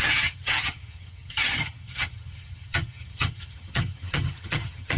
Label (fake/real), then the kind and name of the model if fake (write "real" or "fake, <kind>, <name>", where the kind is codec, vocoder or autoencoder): fake, vocoder, HiFi-GAN